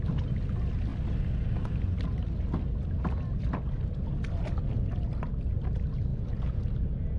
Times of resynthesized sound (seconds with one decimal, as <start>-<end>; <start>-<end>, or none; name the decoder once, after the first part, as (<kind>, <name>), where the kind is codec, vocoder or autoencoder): 6.1-6.6 (vocoder, Vocos)